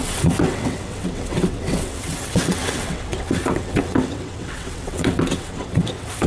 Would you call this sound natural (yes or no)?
no